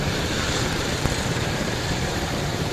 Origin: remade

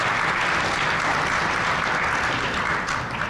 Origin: recorded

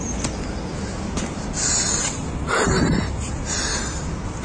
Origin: remade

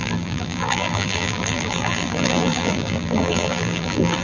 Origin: remade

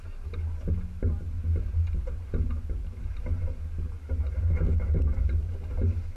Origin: recorded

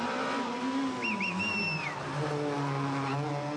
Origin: recorded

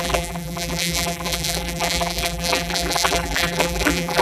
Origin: remade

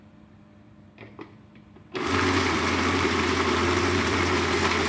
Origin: remade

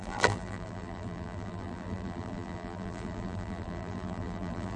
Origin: remade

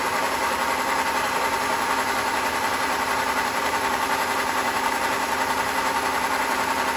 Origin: remade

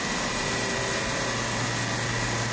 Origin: recorded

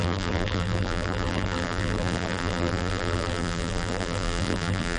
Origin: remade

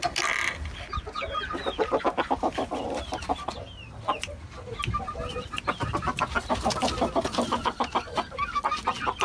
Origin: recorded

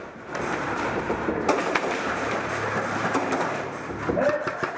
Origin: remade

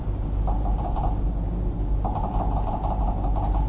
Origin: recorded